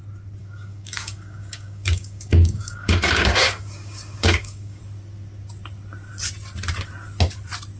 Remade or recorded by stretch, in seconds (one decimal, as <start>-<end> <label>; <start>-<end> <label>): 0.0-0.4 recorded; 0.4-4.8 remade; 4.8-7.8 recorded